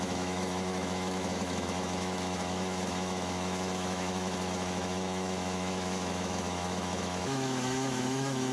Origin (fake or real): fake